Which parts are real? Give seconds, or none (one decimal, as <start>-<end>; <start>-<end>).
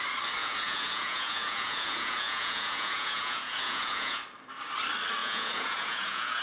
0.0-0.4; 4.2-5.2